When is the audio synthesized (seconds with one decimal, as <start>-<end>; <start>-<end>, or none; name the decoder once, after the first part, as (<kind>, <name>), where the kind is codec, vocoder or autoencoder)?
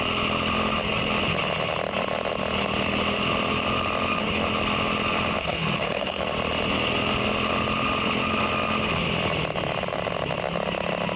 5.4-6.2 (codec, SNAC)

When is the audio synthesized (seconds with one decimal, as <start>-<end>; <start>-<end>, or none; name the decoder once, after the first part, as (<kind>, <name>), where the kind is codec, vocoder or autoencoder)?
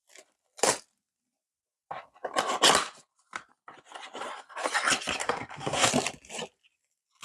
5.2-5.9 (codec, SNAC)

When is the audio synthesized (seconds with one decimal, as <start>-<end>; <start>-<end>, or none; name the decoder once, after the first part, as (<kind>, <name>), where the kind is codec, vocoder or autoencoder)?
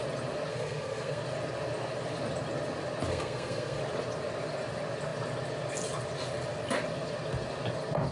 0.5-1.2 (codec, SNAC); 3.1-3.8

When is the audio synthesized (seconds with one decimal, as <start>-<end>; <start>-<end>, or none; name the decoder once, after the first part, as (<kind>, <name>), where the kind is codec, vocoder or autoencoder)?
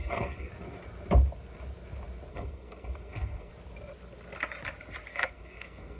0.0-0.5 (codec, SNAC); 2.3-3.5; 5.1-6.0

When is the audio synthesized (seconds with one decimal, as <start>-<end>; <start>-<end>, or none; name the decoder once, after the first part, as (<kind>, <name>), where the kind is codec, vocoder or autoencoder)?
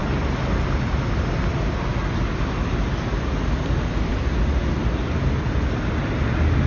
none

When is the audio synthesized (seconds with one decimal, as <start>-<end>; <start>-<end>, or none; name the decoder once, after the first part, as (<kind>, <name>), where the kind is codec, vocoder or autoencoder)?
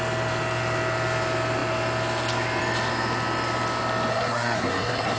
4.1-5.2 (codec, SNAC)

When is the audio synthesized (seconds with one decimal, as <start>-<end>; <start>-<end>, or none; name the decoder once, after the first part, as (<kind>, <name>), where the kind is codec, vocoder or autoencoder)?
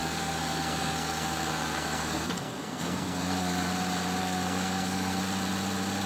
0.0-3.7 (codec, SNAC); 4.2-5.2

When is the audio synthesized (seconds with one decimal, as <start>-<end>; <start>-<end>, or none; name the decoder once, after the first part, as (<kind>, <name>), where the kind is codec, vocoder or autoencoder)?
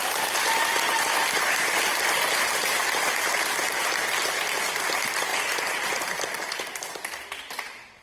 none